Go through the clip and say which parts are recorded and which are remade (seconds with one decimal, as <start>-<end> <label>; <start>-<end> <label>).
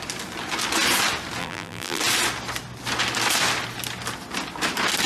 0.0-1.4 recorded; 1.4-2.0 remade; 2.0-5.1 recorded